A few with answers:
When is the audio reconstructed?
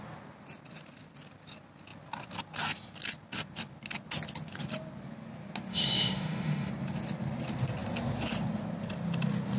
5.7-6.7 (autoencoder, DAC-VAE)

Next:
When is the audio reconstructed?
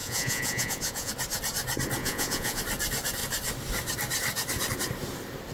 0.0-1.1 (vocoder, Vocos); 2.0-2.6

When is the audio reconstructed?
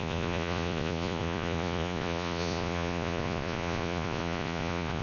0.0-5.0 (vocoder, Vocos)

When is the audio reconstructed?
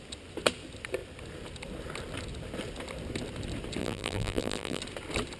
3.8-4.8 (vocoder, BigVGAN v2)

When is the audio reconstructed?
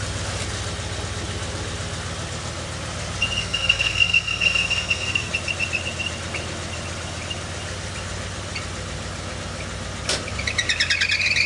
3.4-5.3 (codec, SNAC)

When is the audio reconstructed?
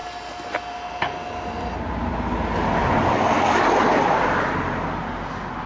none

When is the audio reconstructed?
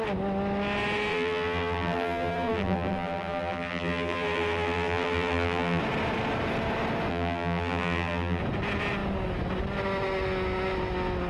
1.1-5.8 (vocoder, BigVGAN v2); 7.1-8.4